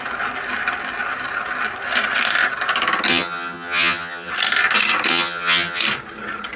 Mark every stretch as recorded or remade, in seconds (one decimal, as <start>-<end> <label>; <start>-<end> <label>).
0.0-3.1 recorded; 3.1-4.3 remade; 4.3-5.1 recorded; 5.1-5.8 remade; 5.8-6.6 recorded